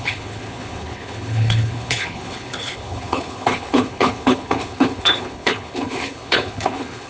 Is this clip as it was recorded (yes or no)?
no